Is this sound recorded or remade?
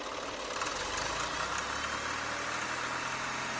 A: recorded